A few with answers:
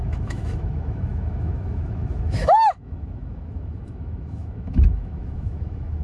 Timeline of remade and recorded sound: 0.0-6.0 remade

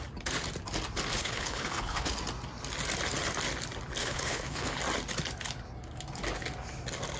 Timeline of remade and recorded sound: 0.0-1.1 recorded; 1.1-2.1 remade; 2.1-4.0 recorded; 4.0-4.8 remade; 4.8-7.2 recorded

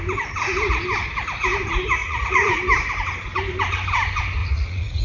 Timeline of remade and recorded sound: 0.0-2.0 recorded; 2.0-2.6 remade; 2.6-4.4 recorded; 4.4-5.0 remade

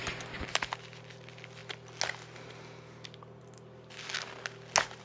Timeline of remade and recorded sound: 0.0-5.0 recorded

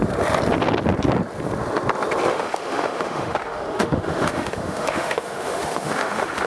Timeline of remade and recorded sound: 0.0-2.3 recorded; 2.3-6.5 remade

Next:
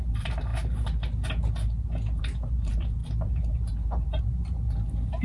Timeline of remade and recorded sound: 0.0-0.5 remade; 0.5-2.2 recorded; 2.2-5.2 remade

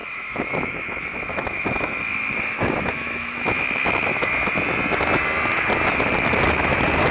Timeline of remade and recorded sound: 0.0-4.3 remade; 4.3-7.1 recorded

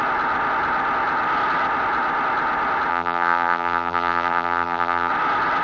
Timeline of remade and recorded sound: 0.0-2.9 recorded; 2.9-5.1 remade; 5.1-5.6 recorded